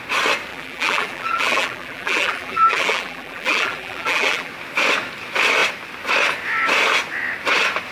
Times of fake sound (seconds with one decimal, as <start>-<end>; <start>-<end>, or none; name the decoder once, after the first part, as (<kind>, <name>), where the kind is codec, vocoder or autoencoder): 0.5-4.5 (vocoder, BigVGAN v2)